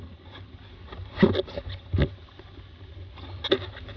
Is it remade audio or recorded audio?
recorded